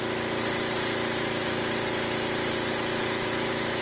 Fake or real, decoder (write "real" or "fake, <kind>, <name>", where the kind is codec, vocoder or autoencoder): real